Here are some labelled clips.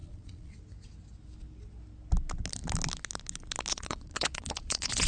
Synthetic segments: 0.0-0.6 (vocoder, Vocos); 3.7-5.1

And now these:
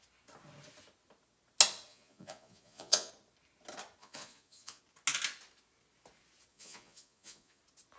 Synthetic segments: 1.9-3.1 (vocoder, Vocos); 4.0-4.8; 6.5-7.6